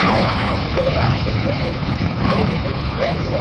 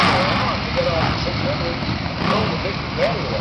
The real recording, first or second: second